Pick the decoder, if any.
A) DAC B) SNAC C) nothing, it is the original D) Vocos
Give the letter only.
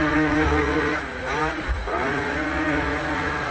D